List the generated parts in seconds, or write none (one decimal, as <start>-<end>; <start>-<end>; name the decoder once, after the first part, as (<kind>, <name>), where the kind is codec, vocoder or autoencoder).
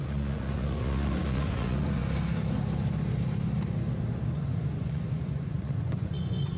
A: 0.0-2.0 (vocoder, Vocos); 4.3-6.6